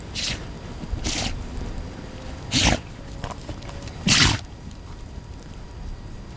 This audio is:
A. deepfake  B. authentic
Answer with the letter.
B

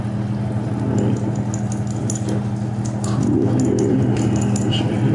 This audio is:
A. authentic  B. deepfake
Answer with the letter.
A